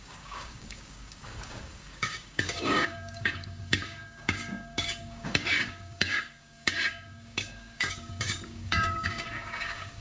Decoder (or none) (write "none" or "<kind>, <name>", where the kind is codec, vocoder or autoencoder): codec, DAC